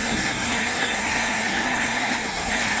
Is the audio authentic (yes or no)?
no